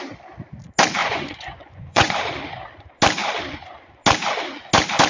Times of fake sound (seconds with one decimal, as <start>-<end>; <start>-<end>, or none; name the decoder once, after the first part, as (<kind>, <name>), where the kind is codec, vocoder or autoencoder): 1.0-2.1 (vocoder, Vocos)